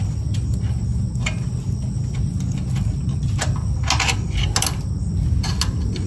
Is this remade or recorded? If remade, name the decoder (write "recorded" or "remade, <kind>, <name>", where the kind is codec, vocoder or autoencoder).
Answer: recorded